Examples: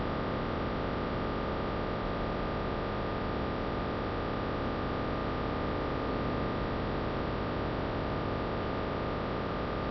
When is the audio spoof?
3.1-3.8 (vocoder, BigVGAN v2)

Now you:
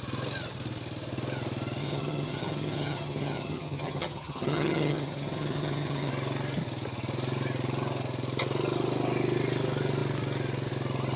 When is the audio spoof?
1.8-6.1 (vocoder, HiFi-GAN)

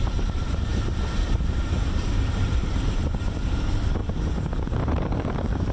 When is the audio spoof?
0.0-4.0 (vocoder, BigVGAN v2); 4.9-5.7